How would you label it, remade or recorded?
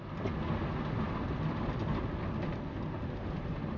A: recorded